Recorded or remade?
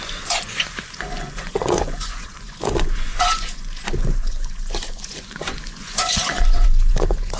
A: remade